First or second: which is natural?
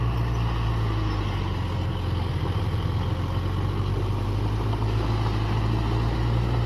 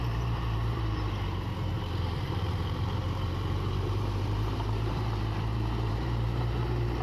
first